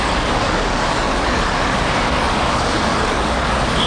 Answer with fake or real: fake